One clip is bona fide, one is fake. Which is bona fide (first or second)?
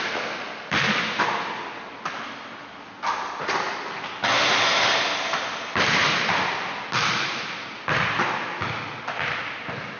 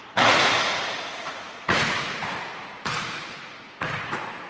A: first